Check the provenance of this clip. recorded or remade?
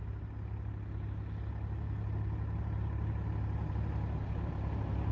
recorded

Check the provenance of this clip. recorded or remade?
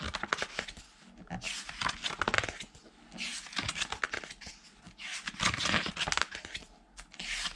recorded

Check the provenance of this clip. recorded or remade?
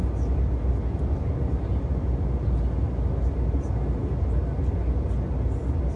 recorded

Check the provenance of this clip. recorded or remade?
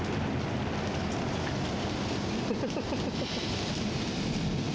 recorded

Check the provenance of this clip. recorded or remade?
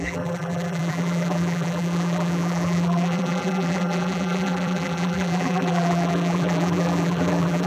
remade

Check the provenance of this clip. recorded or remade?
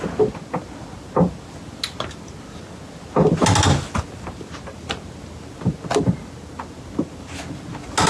recorded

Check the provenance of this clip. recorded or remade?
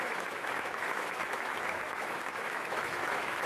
remade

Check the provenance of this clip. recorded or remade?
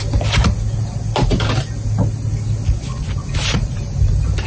recorded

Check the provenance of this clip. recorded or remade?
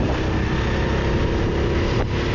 recorded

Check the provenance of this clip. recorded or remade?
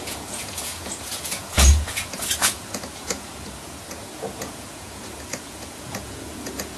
remade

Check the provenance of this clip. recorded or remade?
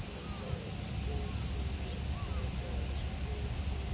recorded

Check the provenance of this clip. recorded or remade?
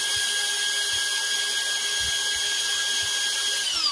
recorded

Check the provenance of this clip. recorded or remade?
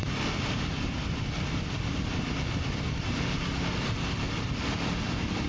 recorded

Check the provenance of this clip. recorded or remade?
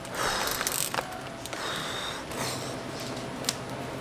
recorded